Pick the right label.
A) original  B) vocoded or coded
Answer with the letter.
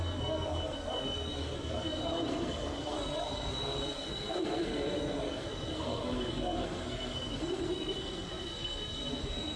B